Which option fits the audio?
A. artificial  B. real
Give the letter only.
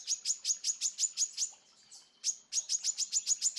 B